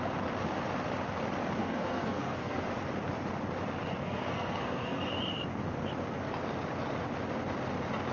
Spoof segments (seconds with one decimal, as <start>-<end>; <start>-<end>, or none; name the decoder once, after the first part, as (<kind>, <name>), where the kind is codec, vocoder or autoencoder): 1.6-2.6 (codec, SNAC); 4.0-5.1